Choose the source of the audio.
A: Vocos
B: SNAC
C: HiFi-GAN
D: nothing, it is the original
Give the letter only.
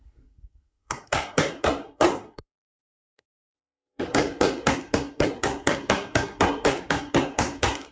B